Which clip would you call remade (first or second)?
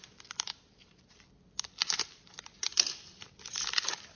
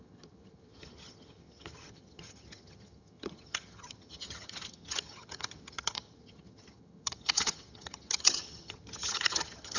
second